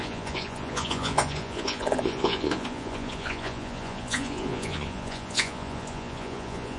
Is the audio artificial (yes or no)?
yes